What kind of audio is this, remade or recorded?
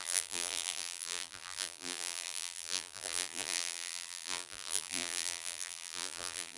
remade